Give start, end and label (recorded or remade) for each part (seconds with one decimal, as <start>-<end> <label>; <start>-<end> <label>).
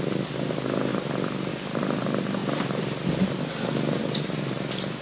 0.0-5.0 recorded